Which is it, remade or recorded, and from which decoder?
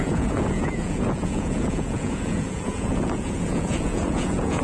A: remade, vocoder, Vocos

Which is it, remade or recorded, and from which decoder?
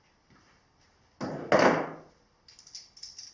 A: recorded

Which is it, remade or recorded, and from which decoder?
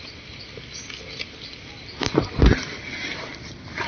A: recorded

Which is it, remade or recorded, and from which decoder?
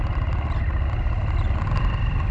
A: recorded